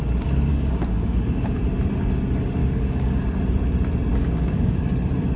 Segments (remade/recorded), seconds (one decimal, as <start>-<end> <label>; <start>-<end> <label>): 0.0-0.5 recorded; 0.5-1.6 remade; 1.6-2.6 recorded; 2.6-3.2 remade; 3.2-4.1 recorded; 4.1-4.8 remade; 4.8-5.4 recorded